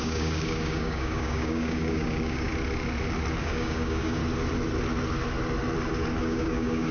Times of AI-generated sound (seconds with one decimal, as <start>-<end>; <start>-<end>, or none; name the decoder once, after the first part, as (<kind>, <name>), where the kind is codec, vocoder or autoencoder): 0.0-2.5 (codec, DAC); 3.4-4.2; 6.2-6.9